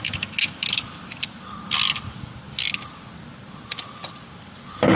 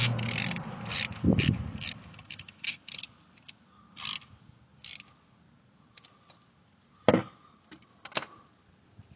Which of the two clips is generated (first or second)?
first